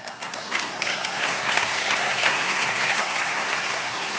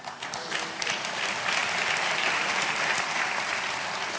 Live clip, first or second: second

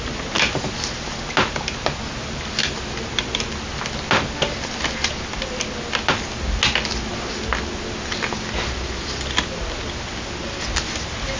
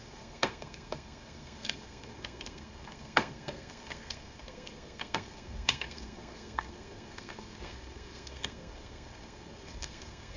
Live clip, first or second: first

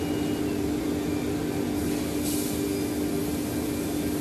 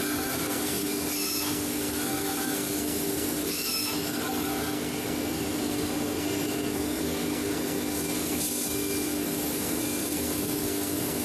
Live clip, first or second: first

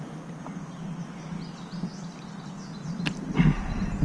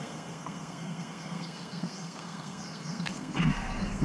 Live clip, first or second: first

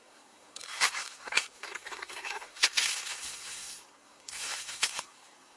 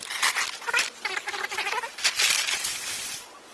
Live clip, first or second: second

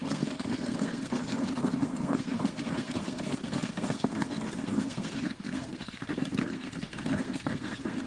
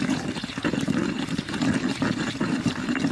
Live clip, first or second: second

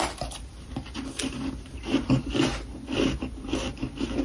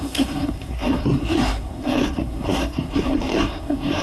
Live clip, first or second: first